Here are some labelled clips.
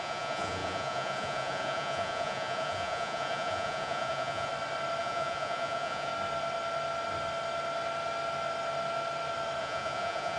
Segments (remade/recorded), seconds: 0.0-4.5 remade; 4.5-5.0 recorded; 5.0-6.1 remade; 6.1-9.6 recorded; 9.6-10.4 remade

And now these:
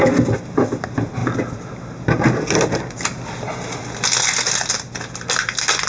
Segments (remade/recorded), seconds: 0.0-5.9 recorded

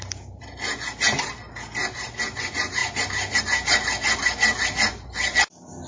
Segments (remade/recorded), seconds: 0.0-5.9 recorded

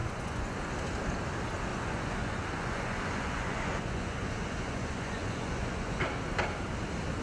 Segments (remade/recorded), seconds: 0.0-0.6 remade; 0.6-1.7 recorded; 1.7-6.0 remade; 6.0-7.2 recorded

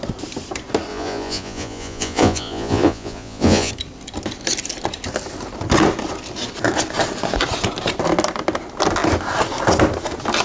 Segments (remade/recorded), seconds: 0.0-0.9 recorded; 0.9-3.7 remade; 3.7-10.4 recorded